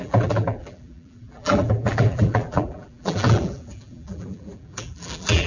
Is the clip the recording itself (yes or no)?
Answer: no